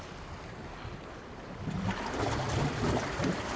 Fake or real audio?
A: real